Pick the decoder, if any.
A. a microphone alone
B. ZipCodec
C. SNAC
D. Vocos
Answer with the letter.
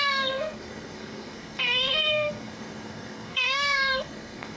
C